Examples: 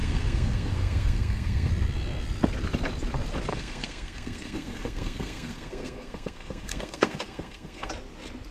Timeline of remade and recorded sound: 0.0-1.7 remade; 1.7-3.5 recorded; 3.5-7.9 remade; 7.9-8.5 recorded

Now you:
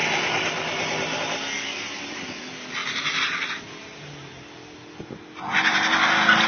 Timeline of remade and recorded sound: 0.0-6.5 recorded

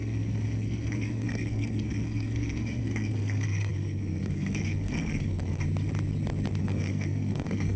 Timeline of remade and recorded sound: 0.0-5.6 remade; 5.6-6.6 recorded; 6.6-7.8 remade

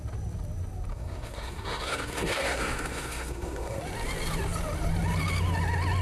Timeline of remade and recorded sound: 0.0-0.9 recorded; 0.9-3.8 remade; 3.8-6.0 recorded

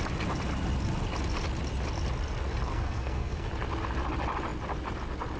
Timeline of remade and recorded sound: 0.0-2.7 recorded; 2.7-3.5 remade; 3.5-5.4 recorded

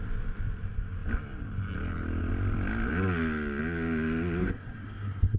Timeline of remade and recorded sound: 0.0-4.4 recorded; 4.4-5.4 remade

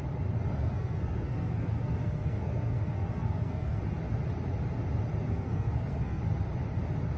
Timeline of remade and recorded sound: 0.0-0.5 recorded; 0.5-3.8 remade; 3.8-5.3 recorded; 5.3-6.2 remade; 6.2-7.2 recorded

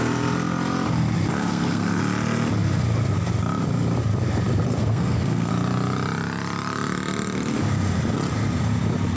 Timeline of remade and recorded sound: 0.0-1.3 recorded; 1.3-2.0 remade; 2.0-4.8 recorded; 4.8-5.5 remade; 5.5-9.2 recorded